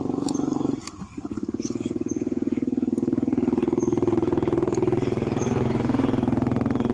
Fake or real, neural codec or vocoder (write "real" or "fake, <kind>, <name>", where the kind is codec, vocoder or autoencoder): fake, vocoder, BigVGAN v2